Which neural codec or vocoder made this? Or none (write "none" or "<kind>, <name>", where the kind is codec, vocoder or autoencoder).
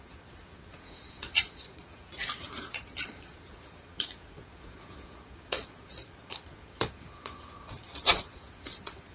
vocoder, Vocos